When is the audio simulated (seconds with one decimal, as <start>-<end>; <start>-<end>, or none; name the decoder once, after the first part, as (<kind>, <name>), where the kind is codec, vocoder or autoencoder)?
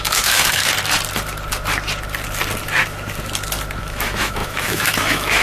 0.0-0.6 (autoencoder, DAC-VAE); 3.8-5.4